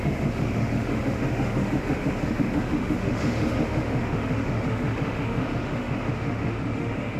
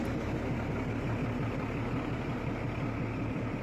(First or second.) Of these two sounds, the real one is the second